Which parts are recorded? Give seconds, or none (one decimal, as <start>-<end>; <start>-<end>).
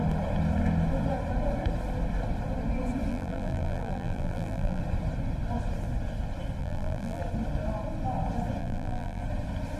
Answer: 0.0-3.1; 4.8-6.6; 7.2-8.6; 9.2-9.8